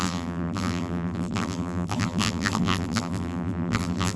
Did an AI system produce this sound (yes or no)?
yes